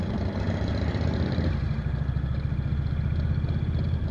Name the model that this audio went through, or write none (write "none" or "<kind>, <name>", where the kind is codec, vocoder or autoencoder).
none